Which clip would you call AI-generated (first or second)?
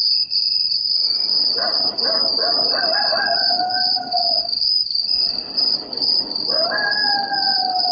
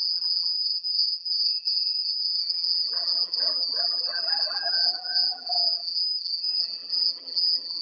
second